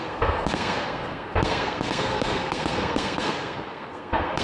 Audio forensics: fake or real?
fake